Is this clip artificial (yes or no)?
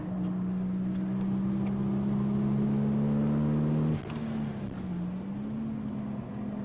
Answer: no